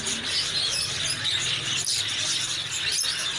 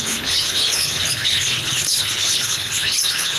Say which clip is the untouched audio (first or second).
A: first